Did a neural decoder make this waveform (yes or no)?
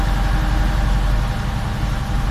no